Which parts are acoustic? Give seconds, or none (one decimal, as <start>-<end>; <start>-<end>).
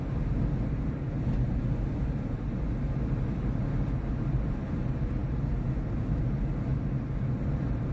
0.0-7.9